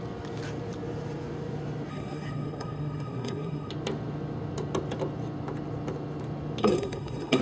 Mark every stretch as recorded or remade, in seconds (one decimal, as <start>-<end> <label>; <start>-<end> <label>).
0.0-1.9 recorded; 1.9-3.7 remade; 3.7-6.6 recorded; 6.6-7.4 remade